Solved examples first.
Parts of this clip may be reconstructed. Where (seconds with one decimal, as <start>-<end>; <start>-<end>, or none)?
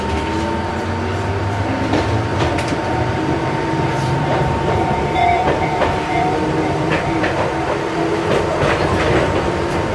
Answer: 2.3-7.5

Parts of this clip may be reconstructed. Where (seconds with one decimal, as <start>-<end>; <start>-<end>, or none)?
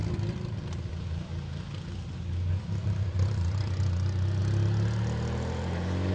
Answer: 0.0-3.7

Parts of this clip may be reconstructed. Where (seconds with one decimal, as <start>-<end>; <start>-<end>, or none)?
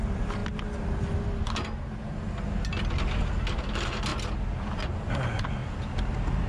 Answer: none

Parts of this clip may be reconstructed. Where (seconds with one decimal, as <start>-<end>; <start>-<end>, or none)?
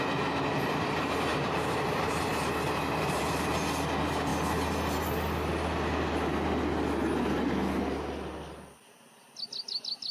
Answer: 1.3-3.5